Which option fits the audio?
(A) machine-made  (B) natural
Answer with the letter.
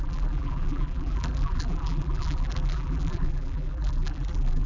A